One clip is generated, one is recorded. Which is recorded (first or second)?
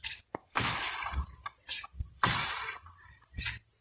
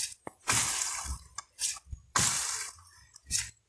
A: second